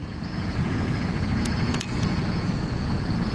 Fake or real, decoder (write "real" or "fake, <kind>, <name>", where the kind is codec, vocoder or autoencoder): fake, vocoder, Vocos